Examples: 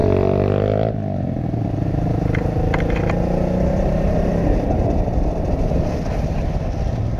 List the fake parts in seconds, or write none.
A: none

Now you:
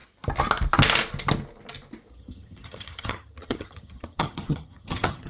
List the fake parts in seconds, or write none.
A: 2.1-5.3 (vocoder, HiFi-GAN)

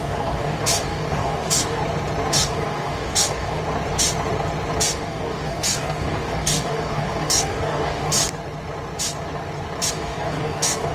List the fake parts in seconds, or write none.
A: 0.0-1.8 (codec, DAC); 2.3-3.6; 4.9-8.2; 9.9-10.9

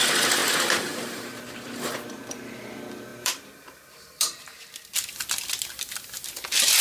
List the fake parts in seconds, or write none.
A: 0.4-1.5 (vocoder, BigVGAN v2); 3.1-4.6

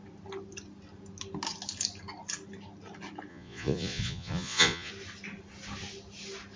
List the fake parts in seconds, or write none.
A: 3.3-4.9 (vocoder, Vocos)

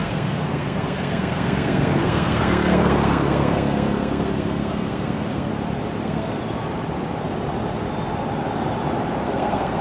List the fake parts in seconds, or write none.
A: 0.0-5.5 (codec, SNAC); 6.0-6.4; 9.2-9.8

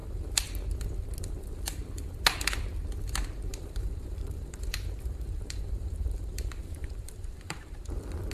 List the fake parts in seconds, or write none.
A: 3.5-7.8 (vocoder, BigVGAN v2)

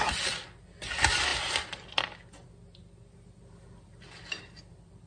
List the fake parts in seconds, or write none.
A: none